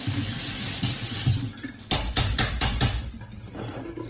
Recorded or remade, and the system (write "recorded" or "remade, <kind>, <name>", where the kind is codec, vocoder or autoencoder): recorded